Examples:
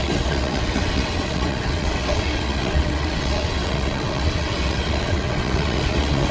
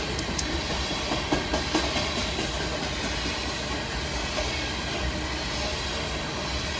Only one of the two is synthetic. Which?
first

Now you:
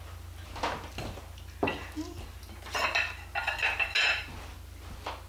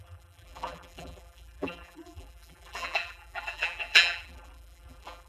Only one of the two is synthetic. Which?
second